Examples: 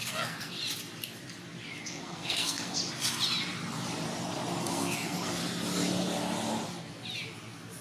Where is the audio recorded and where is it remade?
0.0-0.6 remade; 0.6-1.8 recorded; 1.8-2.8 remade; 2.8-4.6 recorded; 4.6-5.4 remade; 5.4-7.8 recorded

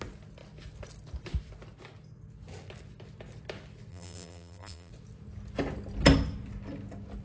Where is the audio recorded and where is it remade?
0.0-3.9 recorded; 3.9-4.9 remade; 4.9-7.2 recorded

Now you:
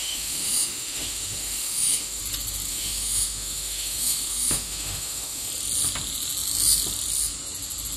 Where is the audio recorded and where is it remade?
0.0-2.2 remade; 2.2-2.7 recorded; 2.7-5.5 remade; 5.5-8.0 recorded

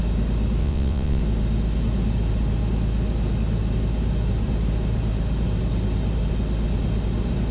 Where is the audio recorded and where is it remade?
0.0-0.6 recorded; 0.6-1.2 remade; 1.2-7.5 recorded

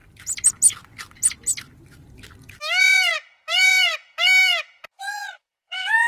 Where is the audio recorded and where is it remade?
0.0-2.8 recorded; 2.8-6.1 remade

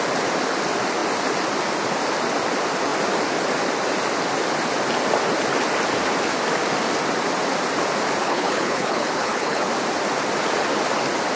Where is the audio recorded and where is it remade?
0.0-8.2 recorded; 8.2-9.7 remade; 9.7-11.4 recorded

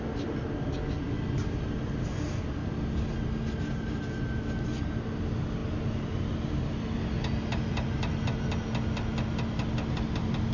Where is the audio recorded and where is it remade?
0.0-10.5 recorded

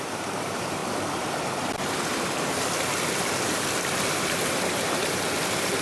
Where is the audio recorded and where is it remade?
0.0-0.8 remade; 0.8-4.1 recorded; 4.1-5.8 remade